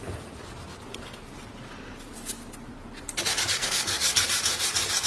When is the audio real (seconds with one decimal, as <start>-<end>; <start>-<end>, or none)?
0.0-3.5; 4.2-5.1